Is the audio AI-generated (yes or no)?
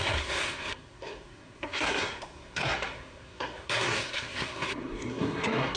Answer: yes